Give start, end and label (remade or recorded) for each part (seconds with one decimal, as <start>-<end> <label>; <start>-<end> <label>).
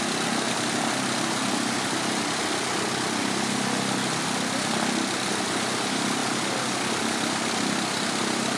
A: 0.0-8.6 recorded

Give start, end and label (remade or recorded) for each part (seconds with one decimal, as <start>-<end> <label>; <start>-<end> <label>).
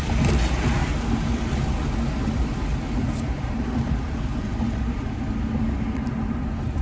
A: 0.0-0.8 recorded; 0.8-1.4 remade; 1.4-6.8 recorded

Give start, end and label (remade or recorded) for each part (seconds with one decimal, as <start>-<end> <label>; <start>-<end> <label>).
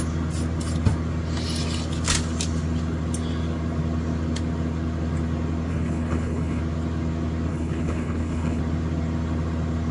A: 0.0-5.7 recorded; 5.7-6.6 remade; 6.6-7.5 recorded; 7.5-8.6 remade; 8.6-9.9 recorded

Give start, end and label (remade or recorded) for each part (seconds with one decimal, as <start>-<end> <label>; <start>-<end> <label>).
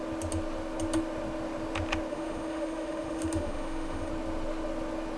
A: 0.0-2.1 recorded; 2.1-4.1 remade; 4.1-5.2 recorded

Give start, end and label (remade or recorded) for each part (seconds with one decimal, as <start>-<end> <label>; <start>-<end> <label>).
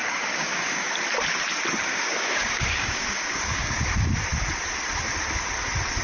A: 0.0-0.9 remade; 0.9-1.9 recorded; 1.9-3.8 remade; 3.8-6.0 recorded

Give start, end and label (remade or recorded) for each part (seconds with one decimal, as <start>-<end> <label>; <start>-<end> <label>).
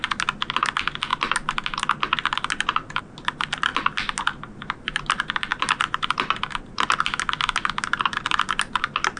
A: 0.0-9.2 recorded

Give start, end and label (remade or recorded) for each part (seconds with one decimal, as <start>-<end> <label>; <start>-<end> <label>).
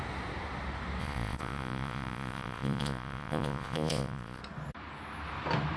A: 0.0-1.0 recorded; 1.0-4.4 remade; 4.4-5.8 recorded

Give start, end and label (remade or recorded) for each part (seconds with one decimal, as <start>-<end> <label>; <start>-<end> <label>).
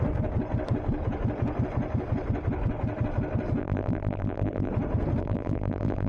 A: 0.0-3.6 recorded; 3.6-4.7 remade; 4.7-5.2 recorded; 5.2-6.1 remade